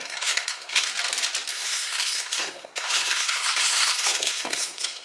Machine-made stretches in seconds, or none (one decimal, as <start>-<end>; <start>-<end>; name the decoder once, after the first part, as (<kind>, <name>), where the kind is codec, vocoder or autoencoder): 0.0-0.9 (codec, SNAC); 1.5-5.0